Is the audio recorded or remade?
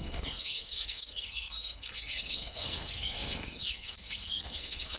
remade